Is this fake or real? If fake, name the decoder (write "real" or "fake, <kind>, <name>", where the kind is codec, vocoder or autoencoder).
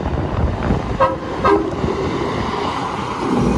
real